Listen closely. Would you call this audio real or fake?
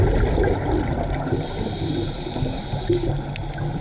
real